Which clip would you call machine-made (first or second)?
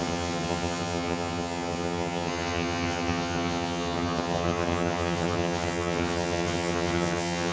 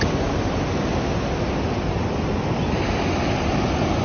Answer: first